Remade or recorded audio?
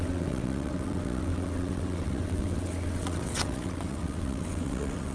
remade